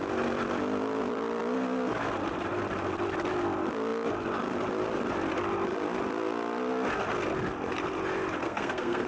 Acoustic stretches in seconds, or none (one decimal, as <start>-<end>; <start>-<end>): 0.0-8.4